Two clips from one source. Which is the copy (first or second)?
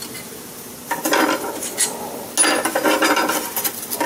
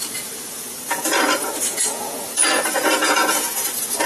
second